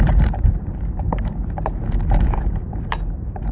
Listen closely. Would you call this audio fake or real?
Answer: fake